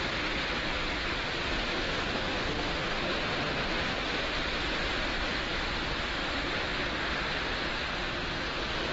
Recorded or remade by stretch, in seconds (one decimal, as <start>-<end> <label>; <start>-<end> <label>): 0.0-2.1 recorded; 2.1-3.0 remade; 3.0-8.9 recorded